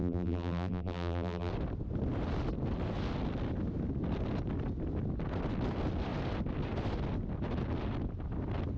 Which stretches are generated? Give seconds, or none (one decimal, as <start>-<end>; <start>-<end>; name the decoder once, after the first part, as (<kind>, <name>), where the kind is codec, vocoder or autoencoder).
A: 0.0-1.5 (vocoder, BigVGAN v2)